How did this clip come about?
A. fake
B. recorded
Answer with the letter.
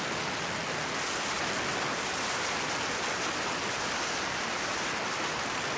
B